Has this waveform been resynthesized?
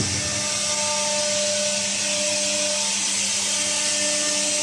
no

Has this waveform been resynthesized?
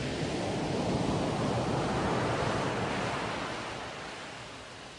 no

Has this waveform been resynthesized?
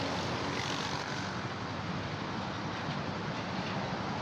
no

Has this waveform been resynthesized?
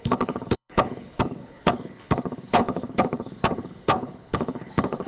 yes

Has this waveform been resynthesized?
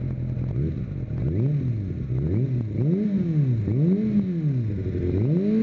no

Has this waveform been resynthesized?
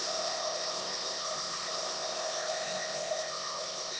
yes